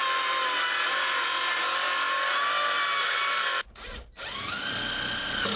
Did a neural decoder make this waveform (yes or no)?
no